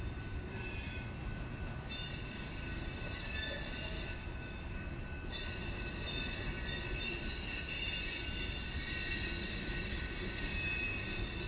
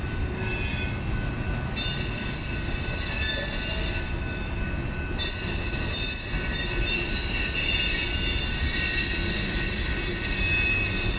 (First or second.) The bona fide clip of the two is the second